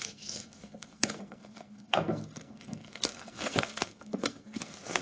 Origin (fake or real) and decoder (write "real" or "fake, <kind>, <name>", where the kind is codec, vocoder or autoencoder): fake, codec, SNAC